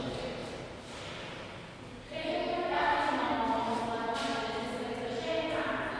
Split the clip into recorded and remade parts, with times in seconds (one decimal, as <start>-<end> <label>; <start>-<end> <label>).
0.0-3.3 recorded; 3.3-3.8 remade; 3.8-6.0 recorded